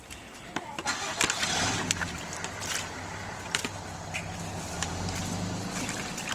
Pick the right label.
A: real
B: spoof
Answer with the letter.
A